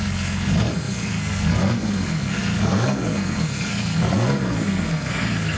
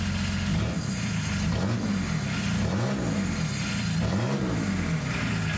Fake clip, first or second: first